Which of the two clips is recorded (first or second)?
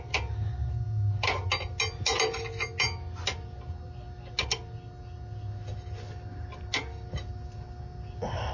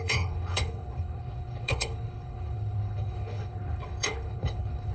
first